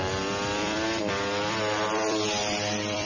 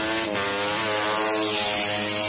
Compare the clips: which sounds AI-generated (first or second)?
first